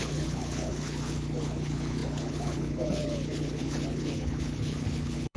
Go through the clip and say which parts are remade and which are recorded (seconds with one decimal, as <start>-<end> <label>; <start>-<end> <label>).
0.0-5.4 remade